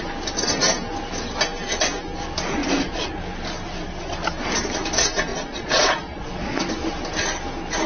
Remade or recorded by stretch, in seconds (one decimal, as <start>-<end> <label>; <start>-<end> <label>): 0.0-2.6 recorded; 2.6-3.2 remade; 3.2-5.3 recorded; 5.3-6.7 remade; 6.7-7.9 recorded

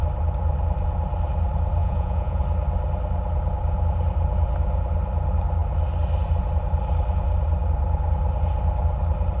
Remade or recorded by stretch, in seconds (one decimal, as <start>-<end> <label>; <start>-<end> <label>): 0.0-1.8 recorded; 1.8-2.4 remade; 2.4-9.4 recorded

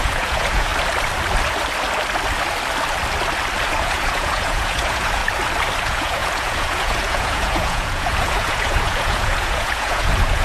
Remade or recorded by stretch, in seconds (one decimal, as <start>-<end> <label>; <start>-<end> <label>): 0.0-0.7 remade; 0.7-3.7 recorded; 3.7-5.2 remade; 5.2-5.8 recorded; 5.8-10.4 remade

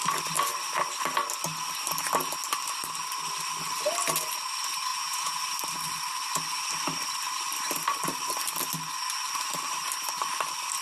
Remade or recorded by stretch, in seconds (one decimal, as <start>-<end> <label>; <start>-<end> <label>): 0.0-4.9 recorded; 4.9-5.4 remade; 5.4-10.8 recorded